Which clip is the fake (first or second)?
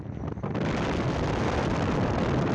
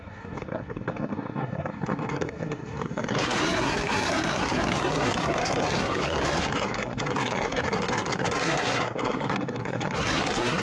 second